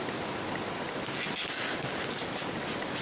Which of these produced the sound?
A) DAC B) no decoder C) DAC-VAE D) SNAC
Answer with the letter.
B